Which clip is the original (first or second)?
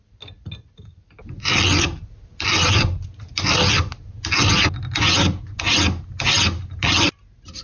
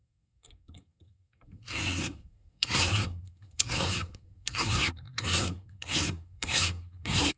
first